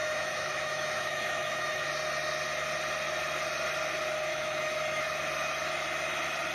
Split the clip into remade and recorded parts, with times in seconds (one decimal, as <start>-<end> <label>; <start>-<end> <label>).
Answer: 0.0-1.9 remade; 1.9-4.3 recorded; 4.3-5.0 remade; 5.0-6.5 recorded